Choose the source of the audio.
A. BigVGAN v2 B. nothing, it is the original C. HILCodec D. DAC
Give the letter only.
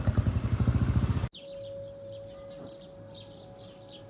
B